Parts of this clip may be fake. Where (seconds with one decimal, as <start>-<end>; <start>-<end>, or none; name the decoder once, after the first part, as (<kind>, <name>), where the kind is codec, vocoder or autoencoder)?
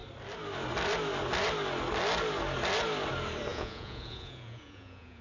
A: 3.5-5.2 (vocoder, Vocos)